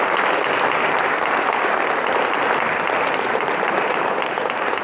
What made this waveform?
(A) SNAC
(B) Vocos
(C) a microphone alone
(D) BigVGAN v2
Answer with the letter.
D